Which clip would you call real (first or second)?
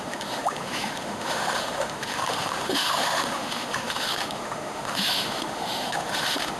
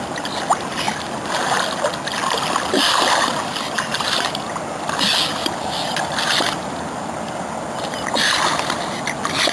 second